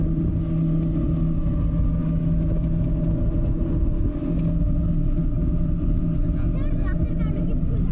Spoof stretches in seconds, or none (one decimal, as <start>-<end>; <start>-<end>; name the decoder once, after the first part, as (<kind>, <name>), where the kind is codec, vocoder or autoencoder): 5.4-6.0 (vocoder, BigVGAN v2); 7.0-7.9

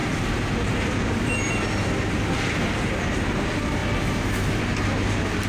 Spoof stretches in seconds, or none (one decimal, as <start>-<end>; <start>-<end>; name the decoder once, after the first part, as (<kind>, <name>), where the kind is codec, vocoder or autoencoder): 0.0-3.8 (vocoder, BigVGAN v2); 4.6-5.5

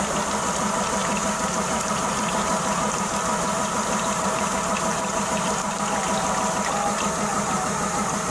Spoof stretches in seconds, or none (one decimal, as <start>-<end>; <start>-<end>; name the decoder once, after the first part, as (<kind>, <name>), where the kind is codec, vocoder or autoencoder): 1.0-5.8 (vocoder, BigVGAN v2); 7.3-8.3

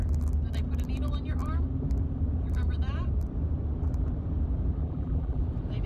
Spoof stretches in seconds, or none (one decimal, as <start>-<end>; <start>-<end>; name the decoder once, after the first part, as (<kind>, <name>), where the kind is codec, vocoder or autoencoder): 4.8-5.4 (vocoder, BigVGAN v2)

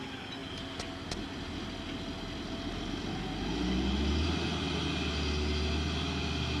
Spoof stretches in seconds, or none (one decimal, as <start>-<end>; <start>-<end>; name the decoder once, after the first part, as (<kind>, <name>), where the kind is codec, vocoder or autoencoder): none

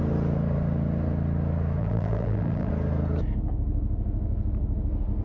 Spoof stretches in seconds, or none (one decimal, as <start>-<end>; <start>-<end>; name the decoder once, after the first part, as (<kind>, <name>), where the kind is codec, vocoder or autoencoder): 1.8-2.7 (vocoder, BigVGAN v2)

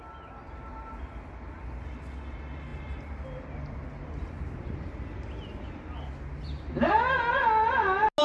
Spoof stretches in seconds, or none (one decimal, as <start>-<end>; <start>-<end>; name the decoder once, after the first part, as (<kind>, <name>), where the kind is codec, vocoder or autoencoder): none